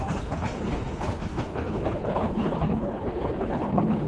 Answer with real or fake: fake